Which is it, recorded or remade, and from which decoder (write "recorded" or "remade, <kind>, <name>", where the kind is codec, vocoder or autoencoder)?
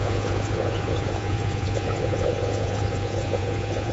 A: remade, vocoder, Vocos